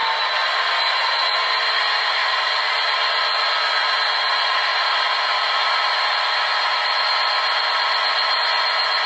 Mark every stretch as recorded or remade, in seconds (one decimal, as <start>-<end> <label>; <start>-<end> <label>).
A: 0.0-9.1 recorded